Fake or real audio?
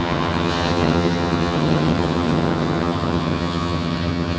fake